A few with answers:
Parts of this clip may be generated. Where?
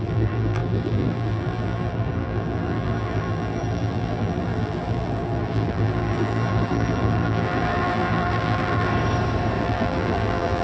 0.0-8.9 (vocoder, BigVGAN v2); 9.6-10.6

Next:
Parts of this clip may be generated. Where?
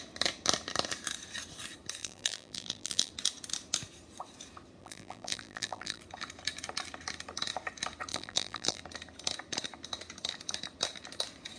2.0-3.1 (vocoder, BigVGAN v2); 4.8-6.0; 8.1-8.8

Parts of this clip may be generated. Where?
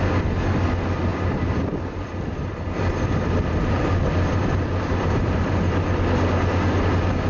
1.1-5.5 (vocoder, BigVGAN v2)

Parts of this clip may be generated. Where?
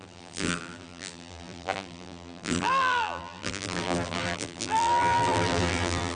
0.0-6.2 (vocoder, BigVGAN v2)